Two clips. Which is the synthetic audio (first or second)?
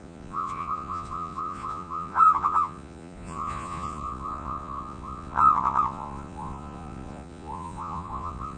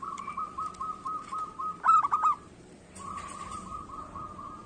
first